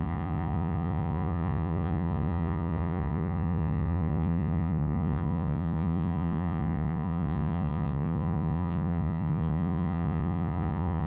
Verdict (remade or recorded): remade